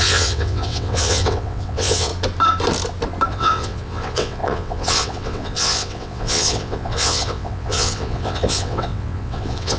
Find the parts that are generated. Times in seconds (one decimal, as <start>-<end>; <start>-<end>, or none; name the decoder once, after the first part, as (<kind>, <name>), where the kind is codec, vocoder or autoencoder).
0.0-2.1 (vocoder, WaveNeXt); 3.3-9.8